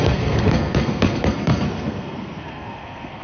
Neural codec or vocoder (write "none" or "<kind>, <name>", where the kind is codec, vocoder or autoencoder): codec, SNAC